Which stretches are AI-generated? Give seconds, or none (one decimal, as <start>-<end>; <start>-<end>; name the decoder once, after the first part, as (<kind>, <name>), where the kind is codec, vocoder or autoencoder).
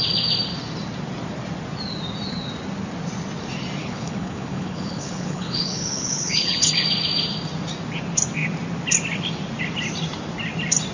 3.8-6.7 (codec, HILCodec)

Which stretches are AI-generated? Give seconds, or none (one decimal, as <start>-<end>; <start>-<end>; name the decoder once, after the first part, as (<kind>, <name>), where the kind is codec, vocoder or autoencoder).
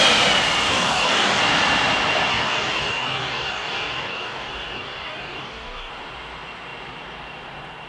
0.7-1.4 (codec, DAC); 2.3-5.9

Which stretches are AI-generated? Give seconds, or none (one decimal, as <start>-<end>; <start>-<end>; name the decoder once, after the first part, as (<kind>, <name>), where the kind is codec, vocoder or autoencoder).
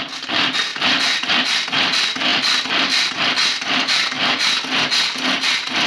none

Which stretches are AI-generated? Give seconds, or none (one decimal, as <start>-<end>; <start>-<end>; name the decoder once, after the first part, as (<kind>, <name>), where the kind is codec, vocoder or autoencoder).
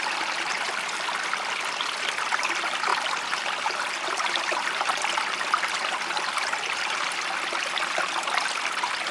none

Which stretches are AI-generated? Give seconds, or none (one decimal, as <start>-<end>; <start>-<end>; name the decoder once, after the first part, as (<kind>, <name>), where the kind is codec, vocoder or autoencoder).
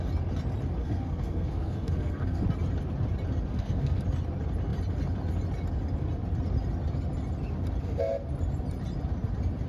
0.8-2.4 (codec, SNAC); 3.5-4.0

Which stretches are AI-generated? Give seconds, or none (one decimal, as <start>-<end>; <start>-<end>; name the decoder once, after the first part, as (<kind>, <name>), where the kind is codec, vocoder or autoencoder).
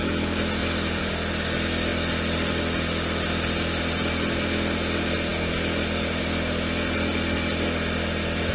0.6-1.1 (vocoder, BigVGAN v2)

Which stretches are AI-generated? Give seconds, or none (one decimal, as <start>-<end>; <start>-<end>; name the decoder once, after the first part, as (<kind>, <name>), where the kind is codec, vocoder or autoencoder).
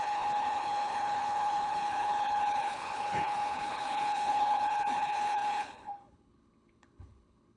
0.0-7.6 (codec, HILCodec)